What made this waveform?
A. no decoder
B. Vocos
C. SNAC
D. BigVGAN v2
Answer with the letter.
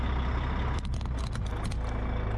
A